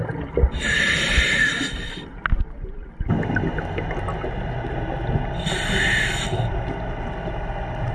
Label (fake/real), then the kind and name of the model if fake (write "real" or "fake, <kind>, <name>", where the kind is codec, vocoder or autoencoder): real